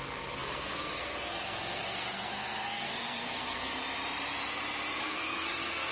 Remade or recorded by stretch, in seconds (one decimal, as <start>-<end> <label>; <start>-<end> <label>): 0.0-3.8 remade; 3.8-5.0 recorded; 5.0-5.9 remade